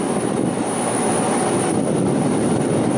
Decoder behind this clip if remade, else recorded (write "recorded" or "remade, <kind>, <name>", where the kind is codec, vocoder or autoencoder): recorded